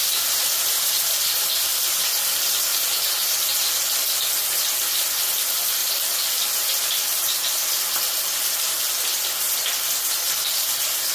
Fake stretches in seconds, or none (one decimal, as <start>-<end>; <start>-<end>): 5.8-7.7